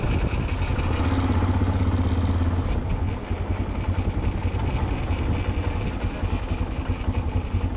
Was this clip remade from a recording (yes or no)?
no